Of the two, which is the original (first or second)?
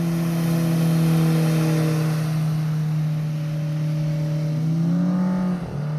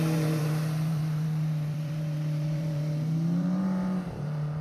first